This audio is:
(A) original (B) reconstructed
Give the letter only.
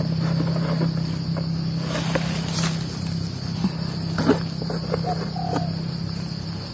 A